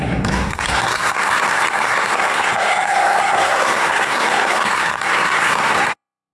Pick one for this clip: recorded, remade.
remade